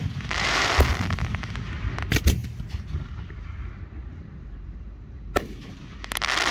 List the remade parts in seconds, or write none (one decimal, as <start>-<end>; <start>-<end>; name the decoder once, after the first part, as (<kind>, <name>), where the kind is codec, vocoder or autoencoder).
4.0-5.8 (vocoder, BigVGAN v2)